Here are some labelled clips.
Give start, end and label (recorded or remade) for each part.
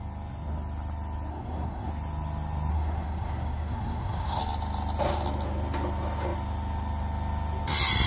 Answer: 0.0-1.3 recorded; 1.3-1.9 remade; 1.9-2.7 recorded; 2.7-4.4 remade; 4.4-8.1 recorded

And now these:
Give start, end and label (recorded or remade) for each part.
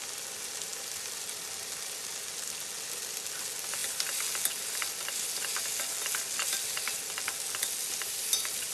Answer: 0.0-8.7 recorded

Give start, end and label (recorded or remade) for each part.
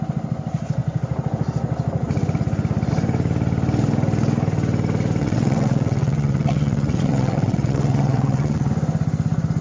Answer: 0.0-5.2 recorded; 5.2-8.7 remade; 8.7-9.6 recorded